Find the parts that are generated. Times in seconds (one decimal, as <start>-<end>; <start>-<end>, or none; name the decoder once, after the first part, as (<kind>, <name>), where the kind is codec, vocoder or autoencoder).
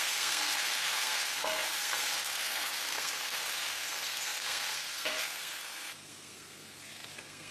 0.0-7.5 (codec, SNAC)